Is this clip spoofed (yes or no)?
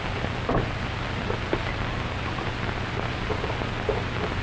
no